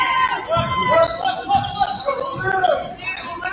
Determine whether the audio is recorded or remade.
recorded